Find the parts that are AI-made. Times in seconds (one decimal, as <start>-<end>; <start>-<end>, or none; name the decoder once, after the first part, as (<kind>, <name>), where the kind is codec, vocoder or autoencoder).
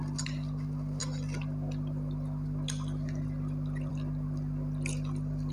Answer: none